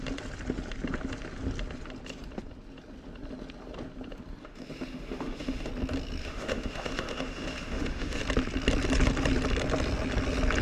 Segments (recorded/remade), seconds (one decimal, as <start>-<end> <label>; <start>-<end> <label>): 0.0-4.4 recorded; 4.4-5.7 remade; 5.7-6.2 recorded; 6.2-8.2 remade; 8.2-10.6 recorded